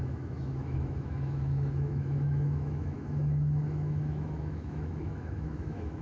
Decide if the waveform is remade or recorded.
remade